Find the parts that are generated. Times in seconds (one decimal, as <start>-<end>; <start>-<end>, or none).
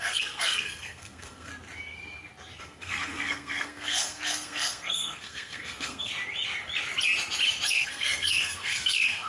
0.0-1.5; 2.6-6.1; 7.7-9.3